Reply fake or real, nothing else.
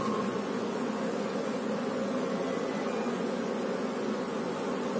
fake